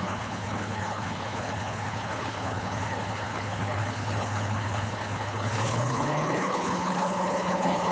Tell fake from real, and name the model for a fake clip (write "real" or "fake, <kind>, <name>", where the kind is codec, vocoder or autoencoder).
fake, codec, HILCodec